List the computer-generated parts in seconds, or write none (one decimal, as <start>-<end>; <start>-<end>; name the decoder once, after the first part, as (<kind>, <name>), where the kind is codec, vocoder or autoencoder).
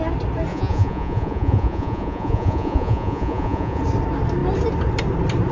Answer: 0.5-3.8 (vocoder, Vocos)